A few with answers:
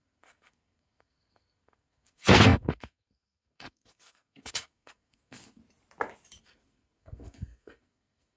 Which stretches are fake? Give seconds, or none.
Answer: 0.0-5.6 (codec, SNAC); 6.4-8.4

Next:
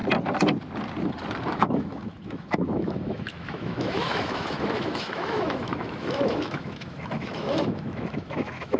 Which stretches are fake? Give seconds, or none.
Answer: 1.5-8.8 (autoencoder, DAC-VAE)

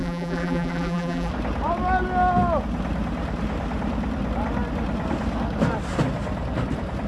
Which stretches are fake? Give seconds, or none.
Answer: 0.0-1.3 (vocoder, BigVGAN v2)

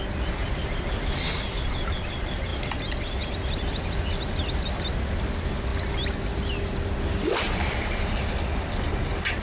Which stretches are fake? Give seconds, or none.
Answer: 0.4-1.4 (vocoder, BigVGAN v2)

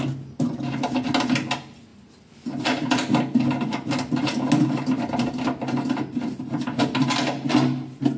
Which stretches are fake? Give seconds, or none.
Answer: none

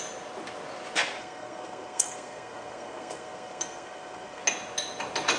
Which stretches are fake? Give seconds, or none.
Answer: 1.2-4.4 (codec, SNAC)